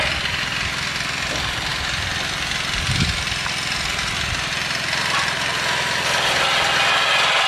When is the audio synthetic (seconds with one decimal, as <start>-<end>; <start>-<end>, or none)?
none